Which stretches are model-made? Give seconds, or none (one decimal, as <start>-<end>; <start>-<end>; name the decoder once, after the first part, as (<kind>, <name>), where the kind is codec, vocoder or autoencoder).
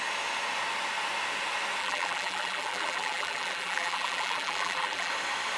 1.8-5.1 (vocoder, BigVGAN v2)